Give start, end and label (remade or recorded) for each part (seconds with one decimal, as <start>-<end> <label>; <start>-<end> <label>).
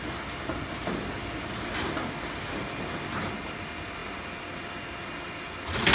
0.0-5.9 recorded